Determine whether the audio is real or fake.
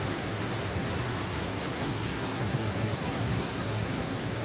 fake